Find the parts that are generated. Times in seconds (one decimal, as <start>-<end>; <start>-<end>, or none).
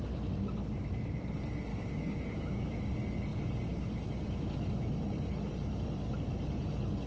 1.7-2.9